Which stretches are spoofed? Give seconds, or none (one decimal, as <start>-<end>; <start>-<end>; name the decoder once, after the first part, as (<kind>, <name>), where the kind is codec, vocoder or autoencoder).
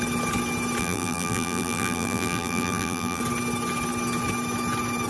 0.8-3.2 (vocoder, BigVGAN v2)